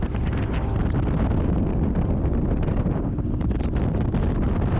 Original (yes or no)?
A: yes